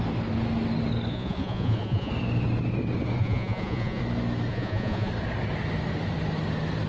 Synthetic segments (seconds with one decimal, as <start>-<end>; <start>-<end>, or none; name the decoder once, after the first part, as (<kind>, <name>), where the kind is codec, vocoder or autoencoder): 1.1-2.1 (vocoder, Vocos); 3.2-4.0; 4.5-5.1

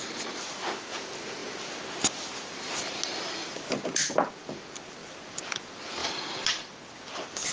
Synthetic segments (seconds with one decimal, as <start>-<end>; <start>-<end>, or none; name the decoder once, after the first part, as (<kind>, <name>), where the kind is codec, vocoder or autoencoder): none